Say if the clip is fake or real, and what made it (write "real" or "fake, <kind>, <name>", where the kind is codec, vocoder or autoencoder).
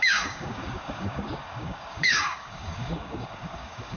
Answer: fake, codec, DAC